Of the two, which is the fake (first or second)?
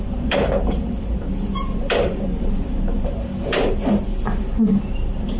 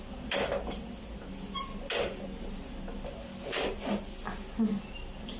first